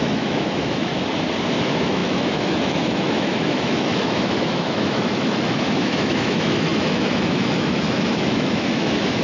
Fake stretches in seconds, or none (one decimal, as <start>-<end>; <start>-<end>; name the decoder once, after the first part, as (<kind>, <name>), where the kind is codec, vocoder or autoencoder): 0.0-0.9 (autoencoder, DAC-VAE); 1.6-9.2